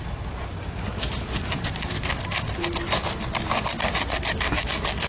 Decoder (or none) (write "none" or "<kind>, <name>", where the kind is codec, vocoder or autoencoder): none